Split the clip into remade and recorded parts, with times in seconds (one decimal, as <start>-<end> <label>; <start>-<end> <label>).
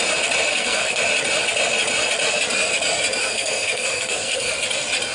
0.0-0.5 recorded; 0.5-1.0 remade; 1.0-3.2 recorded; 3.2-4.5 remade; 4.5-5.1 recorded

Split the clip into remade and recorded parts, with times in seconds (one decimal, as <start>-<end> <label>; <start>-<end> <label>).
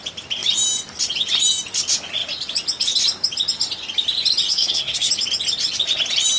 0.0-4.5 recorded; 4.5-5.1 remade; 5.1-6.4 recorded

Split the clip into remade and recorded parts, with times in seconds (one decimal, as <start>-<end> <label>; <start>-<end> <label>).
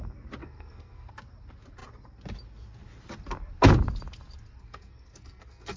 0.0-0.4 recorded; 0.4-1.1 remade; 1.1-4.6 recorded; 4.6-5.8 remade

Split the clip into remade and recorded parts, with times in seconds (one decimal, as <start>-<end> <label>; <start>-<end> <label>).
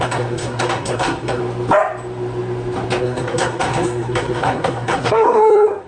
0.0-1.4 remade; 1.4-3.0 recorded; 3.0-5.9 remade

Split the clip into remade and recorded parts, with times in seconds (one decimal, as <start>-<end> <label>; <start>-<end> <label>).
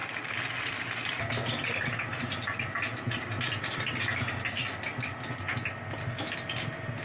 0.0-7.0 recorded